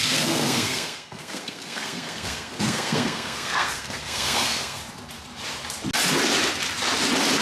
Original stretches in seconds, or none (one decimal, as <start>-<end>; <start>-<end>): 4.8-7.4